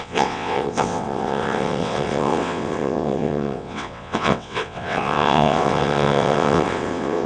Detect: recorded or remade remade